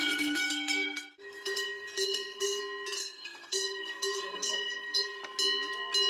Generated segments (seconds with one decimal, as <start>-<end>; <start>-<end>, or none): 0.0-2.6; 3.0-5.2